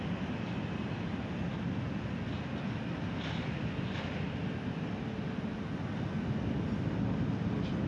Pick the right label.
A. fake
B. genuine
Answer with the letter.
B